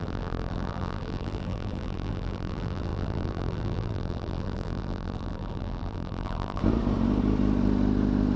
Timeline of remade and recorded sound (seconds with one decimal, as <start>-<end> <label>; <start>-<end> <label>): 0.0-6.6 remade; 6.6-8.4 recorded